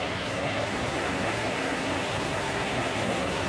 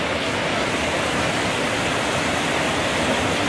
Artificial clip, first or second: first